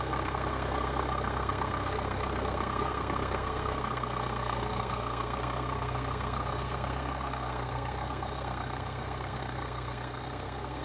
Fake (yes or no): yes